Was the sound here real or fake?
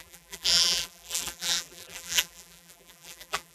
fake